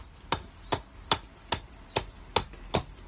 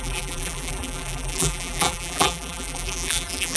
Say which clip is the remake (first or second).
second